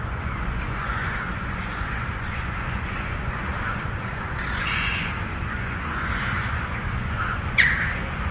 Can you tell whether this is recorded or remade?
remade